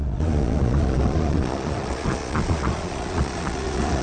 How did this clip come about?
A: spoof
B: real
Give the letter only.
A